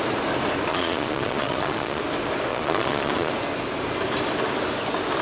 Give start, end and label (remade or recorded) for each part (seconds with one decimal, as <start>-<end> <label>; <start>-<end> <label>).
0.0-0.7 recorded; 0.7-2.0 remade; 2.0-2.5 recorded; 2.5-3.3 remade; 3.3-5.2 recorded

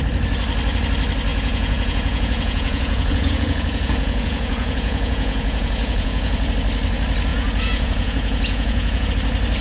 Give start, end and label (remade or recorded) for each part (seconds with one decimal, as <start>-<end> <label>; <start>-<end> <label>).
0.0-1.3 recorded; 1.3-6.5 remade; 6.5-7.3 recorded; 7.3-9.1 remade; 9.1-9.6 recorded

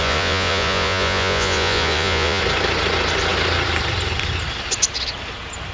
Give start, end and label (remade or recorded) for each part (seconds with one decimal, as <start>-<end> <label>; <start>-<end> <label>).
0.0-2.4 remade; 2.4-5.7 recorded